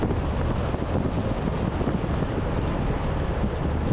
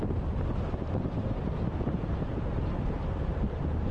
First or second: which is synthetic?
second